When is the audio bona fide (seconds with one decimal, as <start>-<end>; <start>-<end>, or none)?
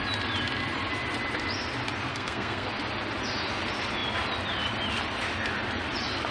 0.0-2.1; 2.7-6.3